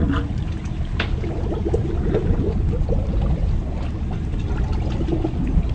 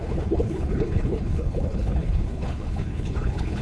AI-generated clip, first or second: second